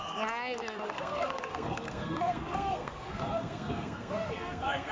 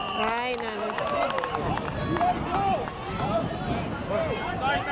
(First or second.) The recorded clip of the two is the second